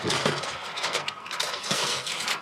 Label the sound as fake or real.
fake